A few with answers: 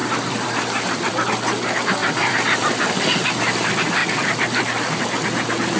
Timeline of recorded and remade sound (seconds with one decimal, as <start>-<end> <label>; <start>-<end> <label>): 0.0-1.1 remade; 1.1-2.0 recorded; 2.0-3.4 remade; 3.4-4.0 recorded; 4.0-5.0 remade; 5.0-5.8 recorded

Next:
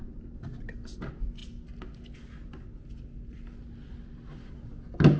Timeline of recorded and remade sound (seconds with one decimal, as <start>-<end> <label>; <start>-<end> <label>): 0.0-5.2 recorded

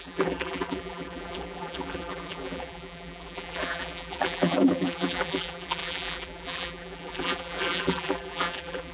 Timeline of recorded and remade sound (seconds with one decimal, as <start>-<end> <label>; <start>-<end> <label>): 0.0-8.9 remade